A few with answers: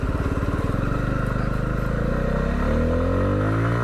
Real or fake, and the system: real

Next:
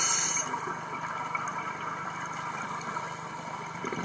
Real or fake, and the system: real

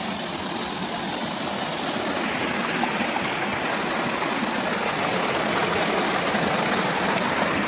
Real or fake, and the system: real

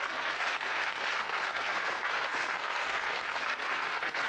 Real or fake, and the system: fake, codec, SNAC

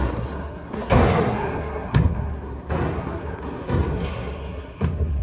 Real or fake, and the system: fake, codec, SNAC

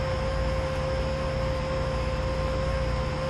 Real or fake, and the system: real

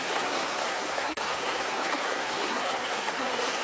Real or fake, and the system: fake, codec, SNAC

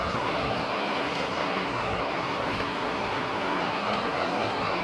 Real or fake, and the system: fake, codec, SNAC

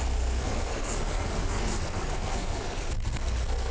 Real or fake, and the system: fake, codec, SNAC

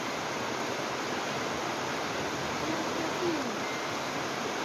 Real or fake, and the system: real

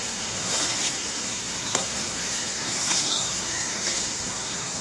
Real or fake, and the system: fake, codec, SNAC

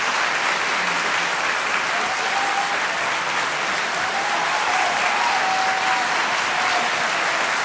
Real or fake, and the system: real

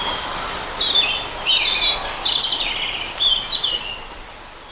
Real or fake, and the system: real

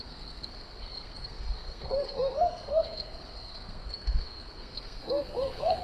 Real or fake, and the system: fake, codec, SNAC